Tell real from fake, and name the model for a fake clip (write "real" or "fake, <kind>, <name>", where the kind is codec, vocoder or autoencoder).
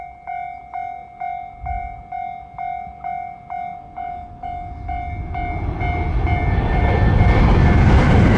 real